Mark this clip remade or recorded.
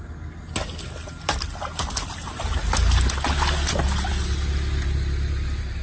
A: recorded